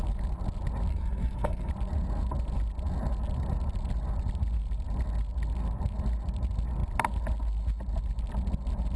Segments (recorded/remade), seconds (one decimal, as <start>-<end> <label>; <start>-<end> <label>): 0.0-0.9 recorded; 0.9-1.7 remade; 1.7-9.0 recorded